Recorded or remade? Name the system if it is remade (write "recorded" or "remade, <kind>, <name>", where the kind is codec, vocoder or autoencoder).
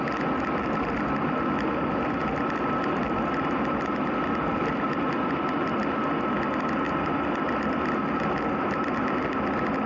recorded